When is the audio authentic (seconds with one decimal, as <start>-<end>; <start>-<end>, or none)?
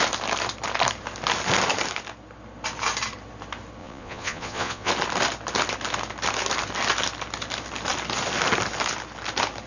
0.0-3.8; 4.9-9.7